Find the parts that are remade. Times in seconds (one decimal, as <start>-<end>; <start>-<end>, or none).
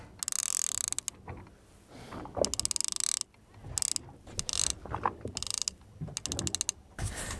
none